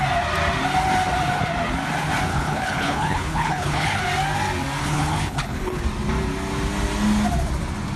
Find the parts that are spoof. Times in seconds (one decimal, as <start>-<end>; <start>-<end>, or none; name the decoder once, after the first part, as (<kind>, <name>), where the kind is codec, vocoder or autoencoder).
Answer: 2.3-4.0 (codec, HILCodec); 4.8-5.8